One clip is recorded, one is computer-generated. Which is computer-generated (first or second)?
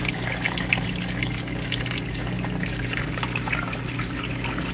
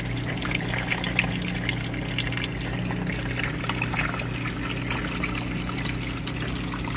first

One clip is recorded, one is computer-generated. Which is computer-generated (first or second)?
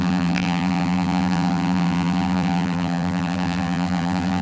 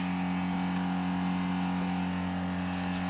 first